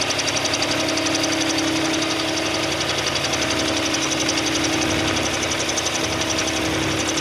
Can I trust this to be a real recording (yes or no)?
yes